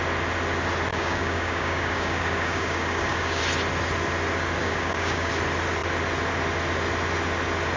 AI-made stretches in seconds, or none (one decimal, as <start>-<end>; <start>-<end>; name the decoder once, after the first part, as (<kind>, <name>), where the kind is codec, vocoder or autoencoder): 0.9-3.4 (codec, DAC); 4.6-5.3